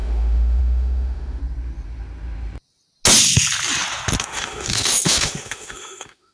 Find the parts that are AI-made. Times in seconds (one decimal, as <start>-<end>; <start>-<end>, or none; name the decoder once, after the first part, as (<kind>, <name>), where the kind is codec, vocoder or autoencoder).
0.0-1.4 (autoencoder, DAC-VAE); 4.2-6.3